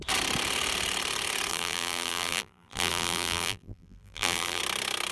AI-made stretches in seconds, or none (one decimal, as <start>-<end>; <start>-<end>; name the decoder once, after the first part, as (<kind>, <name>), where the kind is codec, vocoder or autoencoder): 1.5-4.6 (vocoder, BigVGAN v2)